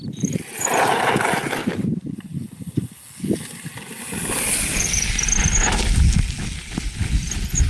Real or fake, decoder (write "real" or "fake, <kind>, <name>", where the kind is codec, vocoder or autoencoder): real